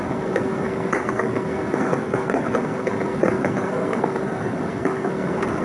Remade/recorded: remade